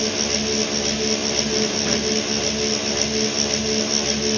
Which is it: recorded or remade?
recorded